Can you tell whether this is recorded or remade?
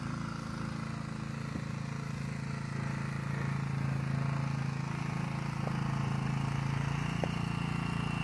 recorded